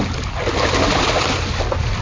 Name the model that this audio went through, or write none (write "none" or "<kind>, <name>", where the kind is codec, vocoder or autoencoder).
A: none